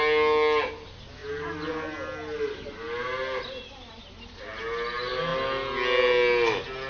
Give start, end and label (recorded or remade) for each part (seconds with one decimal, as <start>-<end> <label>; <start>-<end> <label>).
0.0-6.9 recorded